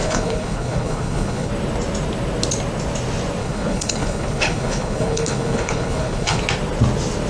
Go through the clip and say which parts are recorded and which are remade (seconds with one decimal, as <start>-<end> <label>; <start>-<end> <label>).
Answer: 0.0-1.5 remade; 1.5-3.4 recorded; 3.4-6.4 remade; 6.4-7.3 recorded